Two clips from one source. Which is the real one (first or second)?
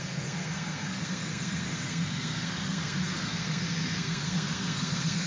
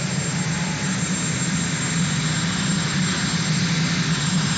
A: second